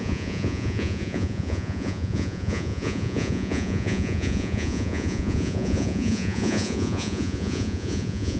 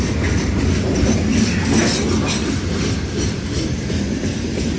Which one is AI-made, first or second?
first